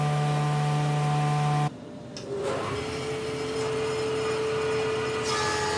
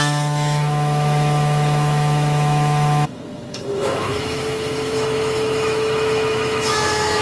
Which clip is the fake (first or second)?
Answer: second